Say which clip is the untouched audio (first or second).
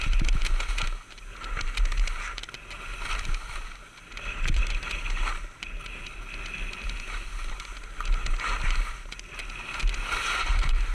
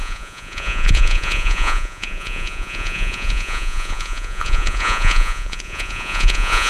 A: first